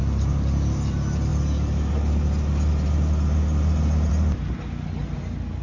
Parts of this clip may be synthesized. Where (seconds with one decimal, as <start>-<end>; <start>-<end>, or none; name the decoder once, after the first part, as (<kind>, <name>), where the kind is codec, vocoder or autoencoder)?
none